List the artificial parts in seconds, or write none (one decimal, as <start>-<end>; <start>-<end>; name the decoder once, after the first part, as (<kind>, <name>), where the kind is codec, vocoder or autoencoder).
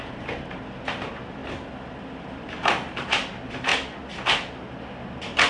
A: 0.0-1.4 (vocoder, BigVGAN v2); 2.1-3.7